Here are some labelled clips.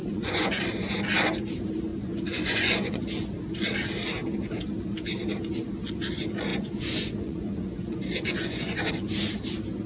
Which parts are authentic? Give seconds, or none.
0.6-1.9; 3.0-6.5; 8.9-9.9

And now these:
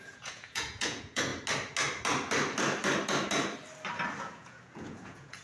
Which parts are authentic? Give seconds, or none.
1.3-4.2